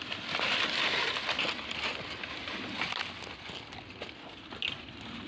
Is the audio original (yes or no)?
yes